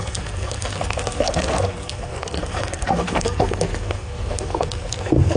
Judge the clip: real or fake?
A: fake